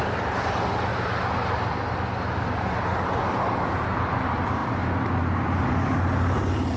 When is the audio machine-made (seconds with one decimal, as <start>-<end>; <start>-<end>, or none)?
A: 0.0-0.9; 3.0-4.6; 5.7-6.8